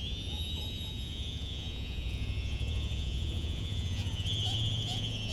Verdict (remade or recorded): remade